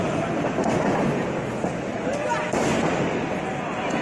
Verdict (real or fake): fake